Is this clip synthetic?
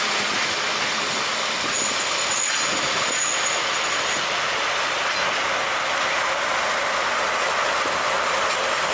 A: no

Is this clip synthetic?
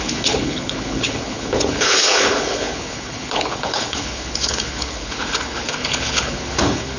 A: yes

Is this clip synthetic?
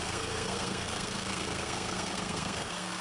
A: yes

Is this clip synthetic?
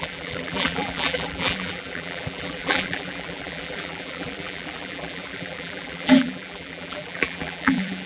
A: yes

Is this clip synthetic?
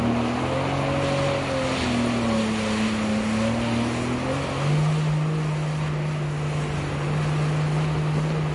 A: no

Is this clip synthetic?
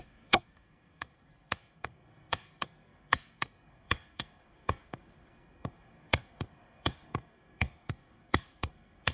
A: yes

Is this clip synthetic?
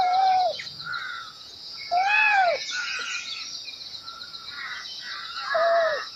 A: yes